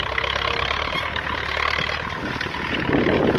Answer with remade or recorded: recorded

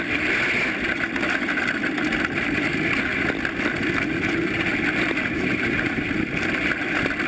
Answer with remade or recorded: recorded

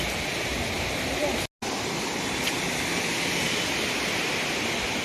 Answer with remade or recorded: recorded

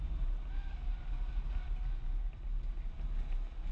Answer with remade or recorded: recorded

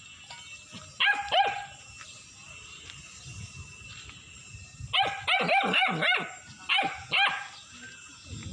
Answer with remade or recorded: recorded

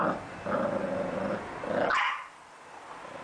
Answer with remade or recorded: recorded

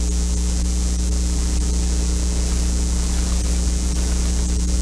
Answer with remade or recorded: recorded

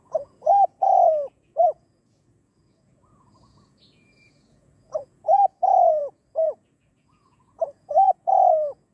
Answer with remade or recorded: remade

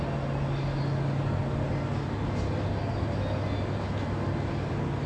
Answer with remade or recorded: recorded